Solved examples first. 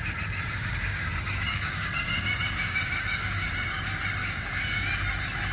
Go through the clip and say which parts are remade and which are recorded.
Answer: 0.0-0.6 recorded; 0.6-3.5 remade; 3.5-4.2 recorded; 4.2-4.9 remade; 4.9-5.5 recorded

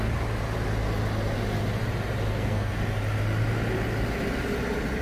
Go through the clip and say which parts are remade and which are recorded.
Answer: 0.0-2.3 recorded; 2.3-2.8 remade; 2.8-5.0 recorded

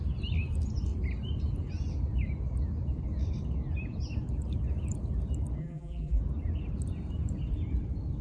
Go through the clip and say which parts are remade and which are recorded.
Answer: 0.0-5.6 recorded; 5.6-6.2 remade; 6.2-8.2 recorded

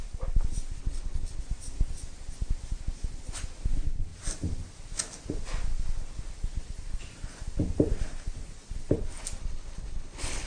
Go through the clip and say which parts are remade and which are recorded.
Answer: 0.0-0.8 recorded; 0.8-1.4 remade; 1.4-9.4 recorded; 9.4-10.5 remade